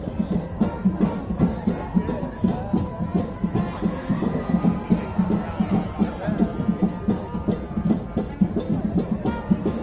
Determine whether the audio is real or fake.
real